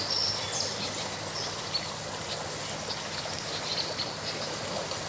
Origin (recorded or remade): recorded